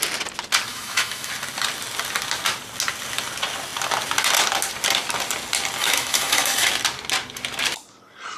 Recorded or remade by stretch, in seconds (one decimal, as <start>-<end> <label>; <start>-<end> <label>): 0.0-0.7 recorded; 0.7-1.3 remade; 1.3-5.8 recorded; 5.8-6.7 remade; 6.7-8.4 recorded